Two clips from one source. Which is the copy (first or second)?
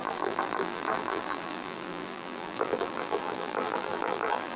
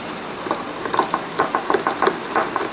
first